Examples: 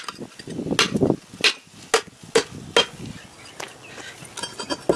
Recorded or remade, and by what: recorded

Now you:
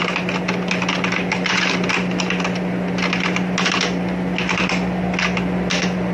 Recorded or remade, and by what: recorded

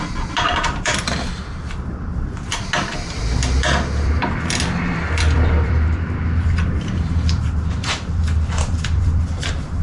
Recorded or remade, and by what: remade, vocoder, BigVGAN v2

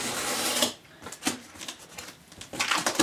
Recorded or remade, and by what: remade, vocoder, BigVGAN v2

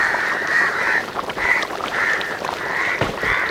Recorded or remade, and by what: remade, vocoder, BigVGAN v2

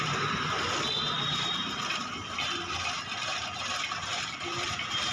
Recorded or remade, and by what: remade, vocoder, BigVGAN v2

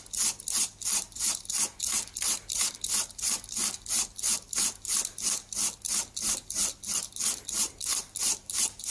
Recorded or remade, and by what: remade, vocoder, BigVGAN v2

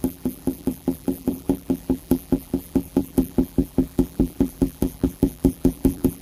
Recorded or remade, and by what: remade, vocoder, BigVGAN v2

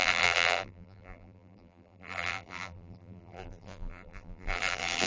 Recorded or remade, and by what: remade, vocoder, BigVGAN v2